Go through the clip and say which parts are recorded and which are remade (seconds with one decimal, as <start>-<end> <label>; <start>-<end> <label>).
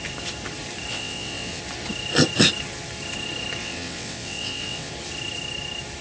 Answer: 0.0-0.9 recorded; 0.9-1.6 remade; 1.6-3.6 recorded; 3.6-4.9 remade; 4.9-6.0 recorded